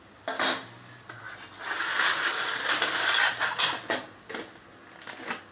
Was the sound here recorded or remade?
recorded